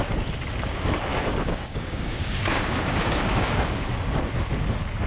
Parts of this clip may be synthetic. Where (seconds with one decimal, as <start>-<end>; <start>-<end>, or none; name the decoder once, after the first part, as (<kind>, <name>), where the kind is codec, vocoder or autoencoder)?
1.1-4.2 (codec, DAC)